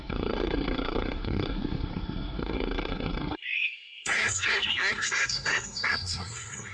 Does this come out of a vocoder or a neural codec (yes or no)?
yes